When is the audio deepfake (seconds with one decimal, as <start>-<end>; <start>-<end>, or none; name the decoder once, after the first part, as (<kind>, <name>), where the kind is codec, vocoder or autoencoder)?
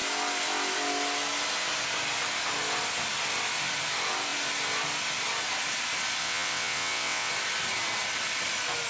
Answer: 6.2-7.3 (vocoder, WaveNeXt)